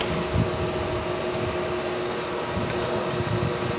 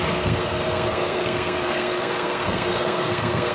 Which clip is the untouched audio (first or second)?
first